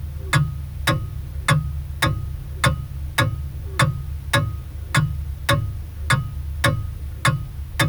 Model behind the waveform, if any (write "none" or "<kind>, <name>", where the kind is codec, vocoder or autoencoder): none